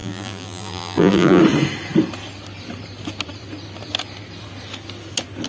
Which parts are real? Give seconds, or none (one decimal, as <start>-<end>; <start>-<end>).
1.4-5.5